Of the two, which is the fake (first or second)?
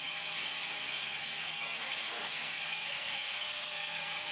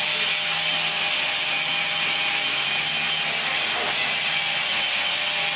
first